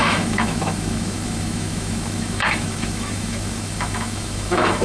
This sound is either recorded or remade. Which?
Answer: remade